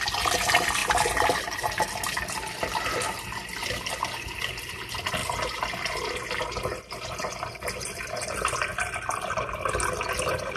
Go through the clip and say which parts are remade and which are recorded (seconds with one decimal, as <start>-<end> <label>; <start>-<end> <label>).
0.0-5.2 remade; 5.2-7.7 recorded; 7.7-8.7 remade; 8.7-10.0 recorded; 10.0-10.6 remade